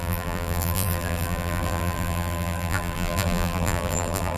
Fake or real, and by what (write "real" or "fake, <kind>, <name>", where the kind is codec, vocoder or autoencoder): fake, vocoder, BigVGAN v2